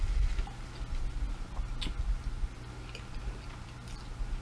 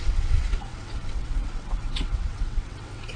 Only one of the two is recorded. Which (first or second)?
first